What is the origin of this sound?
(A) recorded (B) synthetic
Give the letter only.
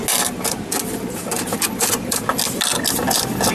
A